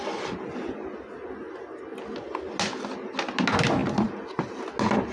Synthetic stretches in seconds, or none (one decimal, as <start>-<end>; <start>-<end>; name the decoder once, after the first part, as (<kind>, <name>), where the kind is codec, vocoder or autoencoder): none